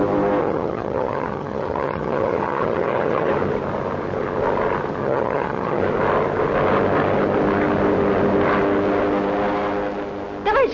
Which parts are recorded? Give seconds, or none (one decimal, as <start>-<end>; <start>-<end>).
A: 0.0-0.4; 3.3-5.0; 5.8-10.7